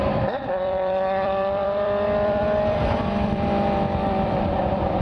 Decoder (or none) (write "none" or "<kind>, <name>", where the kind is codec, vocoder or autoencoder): vocoder, BigVGAN v2